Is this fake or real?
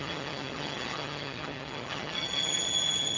fake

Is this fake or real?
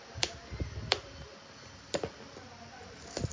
real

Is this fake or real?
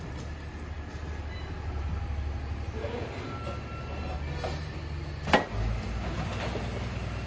real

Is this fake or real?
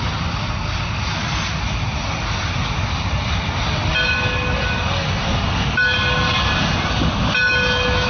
real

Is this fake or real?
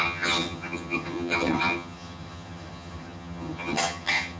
fake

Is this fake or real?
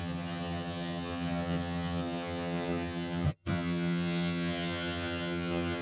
fake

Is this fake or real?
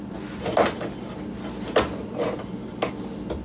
real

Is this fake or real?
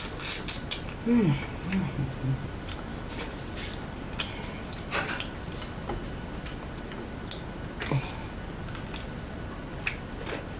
real